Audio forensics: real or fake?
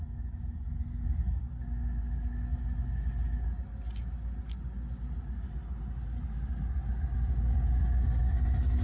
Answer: real